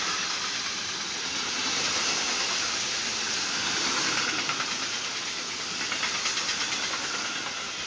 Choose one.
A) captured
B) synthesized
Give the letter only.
A